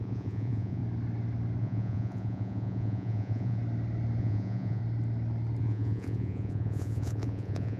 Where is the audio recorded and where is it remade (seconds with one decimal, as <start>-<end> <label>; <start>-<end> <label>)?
0.0-0.8 remade; 0.8-1.6 recorded; 1.6-3.6 remade; 3.6-4.2 recorded; 4.2-4.8 remade; 4.8-5.6 recorded; 5.6-7.8 remade